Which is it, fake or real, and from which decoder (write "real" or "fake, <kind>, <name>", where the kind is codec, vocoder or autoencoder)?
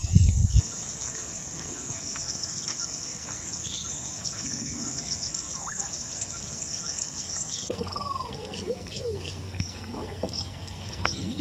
fake, codec, SNAC